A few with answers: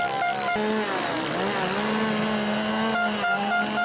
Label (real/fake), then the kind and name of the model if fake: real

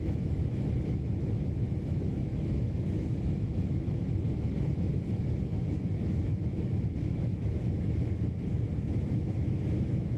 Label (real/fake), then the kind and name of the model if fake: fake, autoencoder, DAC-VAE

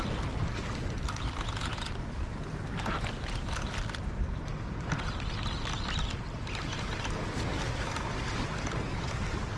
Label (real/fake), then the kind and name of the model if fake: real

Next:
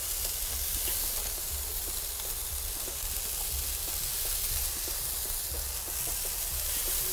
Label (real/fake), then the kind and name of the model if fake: real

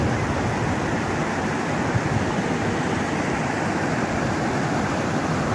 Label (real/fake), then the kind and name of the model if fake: real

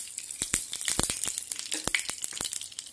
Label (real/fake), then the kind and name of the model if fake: real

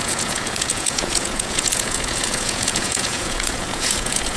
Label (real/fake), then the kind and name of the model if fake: fake, vocoder, Vocos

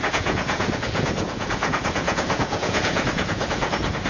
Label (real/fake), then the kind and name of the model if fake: fake, vocoder, Vocos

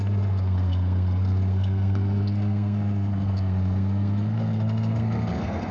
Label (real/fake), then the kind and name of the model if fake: fake, codec, SNAC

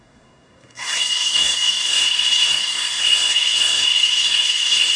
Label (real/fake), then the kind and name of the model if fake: fake, codec, SNAC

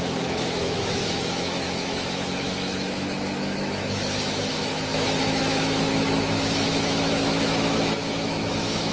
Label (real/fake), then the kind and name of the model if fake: fake, autoencoder, DAC-VAE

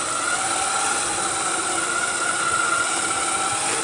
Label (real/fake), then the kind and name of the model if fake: real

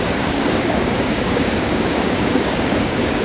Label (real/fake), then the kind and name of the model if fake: fake, codec, DAC